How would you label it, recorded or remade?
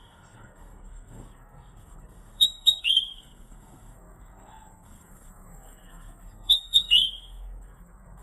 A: remade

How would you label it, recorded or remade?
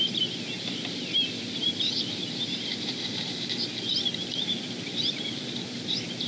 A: remade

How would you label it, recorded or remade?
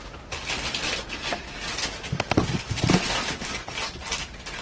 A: recorded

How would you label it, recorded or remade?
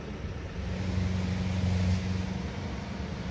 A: recorded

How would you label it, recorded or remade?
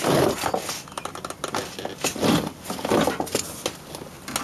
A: recorded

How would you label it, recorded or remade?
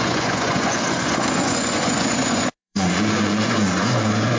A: remade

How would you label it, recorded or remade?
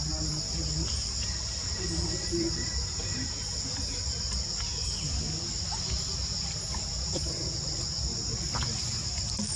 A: recorded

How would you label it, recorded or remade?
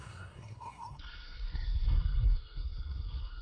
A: remade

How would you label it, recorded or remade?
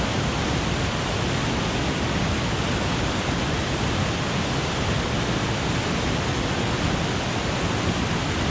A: recorded